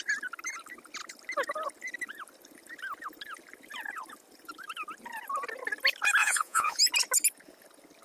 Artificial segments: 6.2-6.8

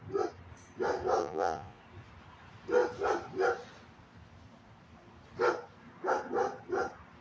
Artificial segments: 1.2-1.8

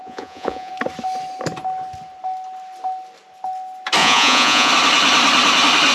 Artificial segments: 0.0-0.7; 4.0-4.7

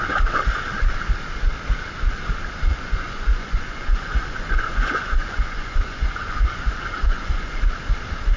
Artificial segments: 2.7-7.6

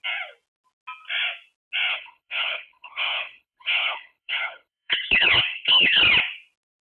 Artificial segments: 1.9-6.0